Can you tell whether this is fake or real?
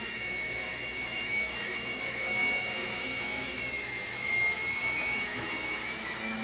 fake